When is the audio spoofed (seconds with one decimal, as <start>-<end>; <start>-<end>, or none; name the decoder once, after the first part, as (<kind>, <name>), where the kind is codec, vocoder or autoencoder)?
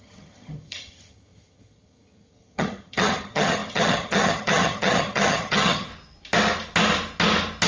0.0-5.9 (vocoder, HiFi-GAN)